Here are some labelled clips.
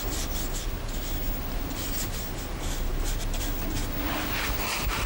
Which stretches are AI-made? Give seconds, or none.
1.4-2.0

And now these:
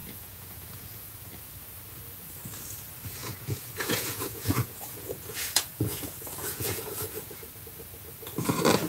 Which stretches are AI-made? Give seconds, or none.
0.0-1.3; 3.2-7.4

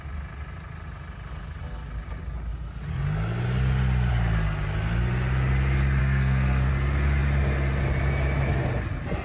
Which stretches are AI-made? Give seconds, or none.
6.0-6.7

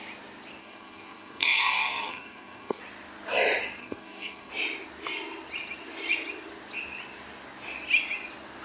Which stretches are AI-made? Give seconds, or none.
0.6-2.8; 3.8-4.5